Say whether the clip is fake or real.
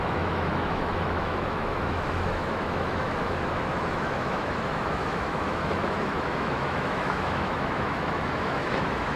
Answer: fake